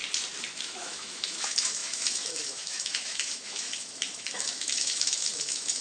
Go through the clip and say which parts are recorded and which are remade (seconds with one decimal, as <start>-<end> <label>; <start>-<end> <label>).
0.0-0.5 recorded; 0.5-5.8 remade